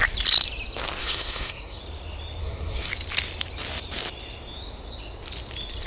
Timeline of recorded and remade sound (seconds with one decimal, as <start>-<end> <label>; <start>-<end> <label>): 0.0-1.0 recorded; 1.0-1.8 remade; 1.8-2.4 recorded; 2.4-2.9 remade; 2.9-5.9 recorded